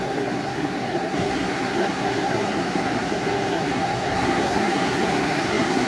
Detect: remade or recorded remade